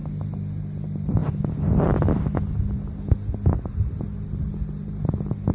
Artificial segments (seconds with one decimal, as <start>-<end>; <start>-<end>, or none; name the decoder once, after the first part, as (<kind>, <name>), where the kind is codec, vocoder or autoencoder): none